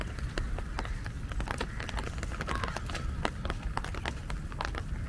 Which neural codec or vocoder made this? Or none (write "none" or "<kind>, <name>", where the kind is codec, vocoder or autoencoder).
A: none